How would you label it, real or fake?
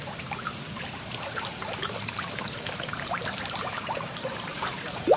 fake